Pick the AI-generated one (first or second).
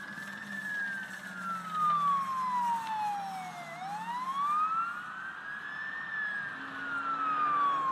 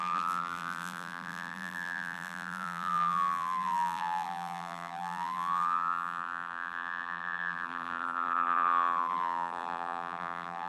second